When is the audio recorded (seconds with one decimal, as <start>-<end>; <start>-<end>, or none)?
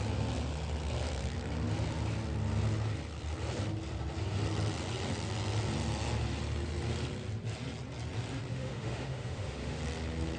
0.0-8.5; 9.8-10.4